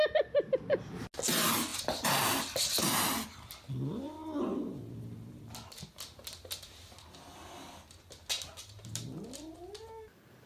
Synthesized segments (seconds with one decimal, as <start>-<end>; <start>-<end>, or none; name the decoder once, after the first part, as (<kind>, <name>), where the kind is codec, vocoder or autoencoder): none